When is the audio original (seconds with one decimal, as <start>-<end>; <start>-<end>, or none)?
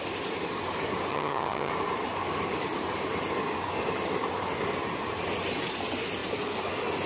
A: 0.0-1.1; 1.7-7.1